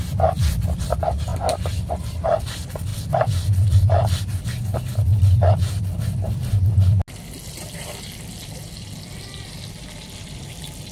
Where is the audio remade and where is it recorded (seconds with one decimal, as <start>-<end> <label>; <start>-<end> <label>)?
0.0-1.3 remade; 1.3-1.9 recorded; 1.9-6.4 remade; 6.4-8.4 recorded; 8.4-10.9 remade